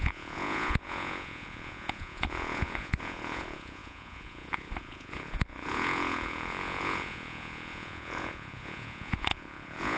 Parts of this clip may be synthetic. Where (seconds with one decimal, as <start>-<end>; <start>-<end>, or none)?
0.0-10.0